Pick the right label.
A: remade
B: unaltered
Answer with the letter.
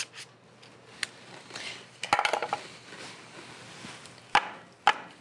B